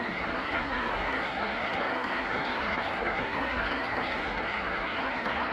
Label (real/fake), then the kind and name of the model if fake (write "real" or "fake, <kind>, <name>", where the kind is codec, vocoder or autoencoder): fake, codec, SNAC